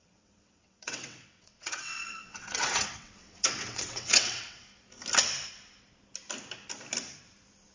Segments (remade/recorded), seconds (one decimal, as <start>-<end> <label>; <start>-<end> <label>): 0.0-4.6 remade; 4.6-7.7 recorded